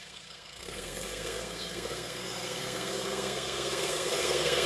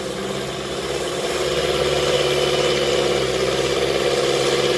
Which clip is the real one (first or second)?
second